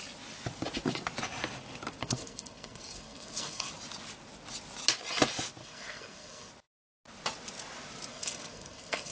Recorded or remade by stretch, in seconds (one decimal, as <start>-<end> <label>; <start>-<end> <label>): 0.0-2.0 recorded; 2.0-3.7 remade; 3.7-5.6 recorded; 5.6-6.5 remade; 6.5-8.1 recorded; 8.1-9.1 remade